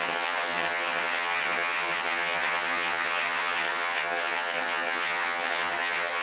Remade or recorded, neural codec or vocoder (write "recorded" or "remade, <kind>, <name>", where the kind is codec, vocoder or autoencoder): remade, vocoder, HiFi-GAN